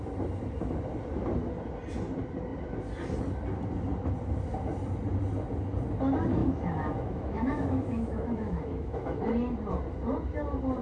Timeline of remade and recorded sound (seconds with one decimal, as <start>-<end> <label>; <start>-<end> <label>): 0.0-6.4 recorded; 6.4-9.2 remade; 9.2-10.8 recorded